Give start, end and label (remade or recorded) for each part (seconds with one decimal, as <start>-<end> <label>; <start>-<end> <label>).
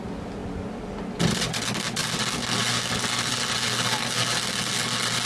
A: 0.0-5.3 recorded